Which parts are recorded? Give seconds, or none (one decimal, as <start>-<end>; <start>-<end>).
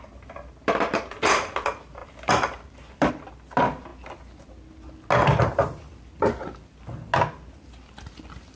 3.9-5.4; 7.1-7.7